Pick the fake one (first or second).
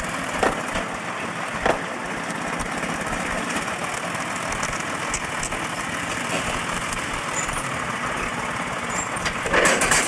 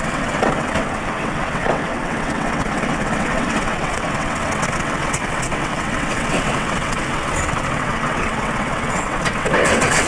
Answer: second